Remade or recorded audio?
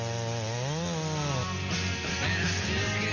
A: recorded